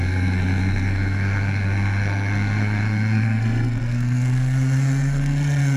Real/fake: fake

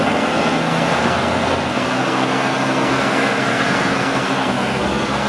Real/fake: fake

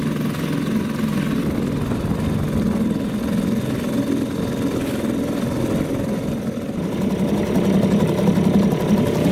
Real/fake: real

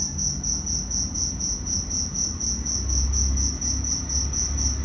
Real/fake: real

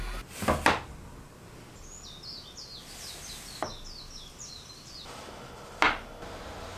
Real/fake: real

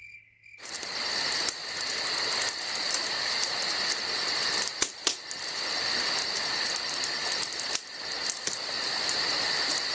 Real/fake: real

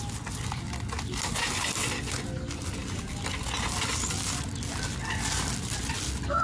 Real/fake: real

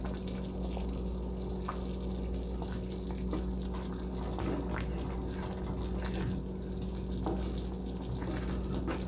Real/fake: real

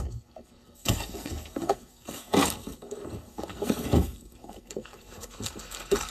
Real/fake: fake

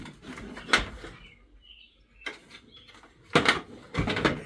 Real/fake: real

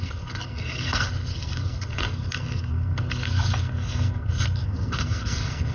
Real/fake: fake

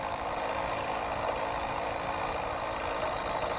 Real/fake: real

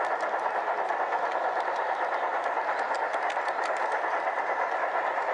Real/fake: real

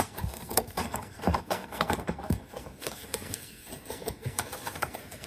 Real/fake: fake